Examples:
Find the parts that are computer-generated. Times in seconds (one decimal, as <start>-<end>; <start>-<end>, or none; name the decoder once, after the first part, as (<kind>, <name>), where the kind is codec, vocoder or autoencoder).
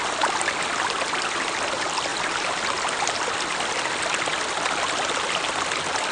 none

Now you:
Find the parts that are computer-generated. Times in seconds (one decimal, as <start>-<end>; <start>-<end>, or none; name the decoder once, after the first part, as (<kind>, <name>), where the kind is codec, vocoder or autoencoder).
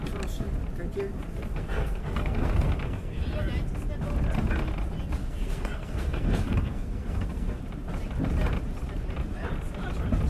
1.5-3.2 (codec, SNAC); 5.2-7.6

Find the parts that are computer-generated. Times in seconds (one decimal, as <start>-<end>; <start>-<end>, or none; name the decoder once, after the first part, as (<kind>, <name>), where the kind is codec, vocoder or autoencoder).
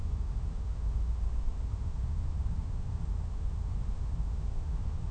0.0-5.1 (autoencoder, DAC-VAE)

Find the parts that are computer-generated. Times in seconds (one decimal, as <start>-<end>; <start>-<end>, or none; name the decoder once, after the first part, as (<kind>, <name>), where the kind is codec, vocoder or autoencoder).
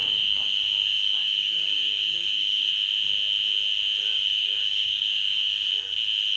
0.0-2.7 (codec, DAC); 4.1-5.7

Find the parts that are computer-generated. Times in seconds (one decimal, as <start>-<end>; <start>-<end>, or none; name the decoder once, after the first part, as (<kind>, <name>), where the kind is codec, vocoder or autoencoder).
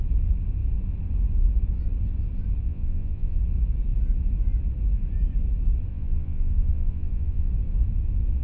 2.6-3.4 (vocoder, Vocos); 5.9-7.5